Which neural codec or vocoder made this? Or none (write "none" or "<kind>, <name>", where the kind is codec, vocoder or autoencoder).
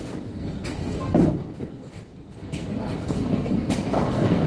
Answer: codec, SNAC